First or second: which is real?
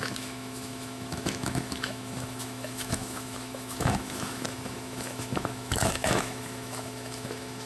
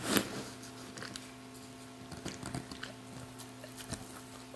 second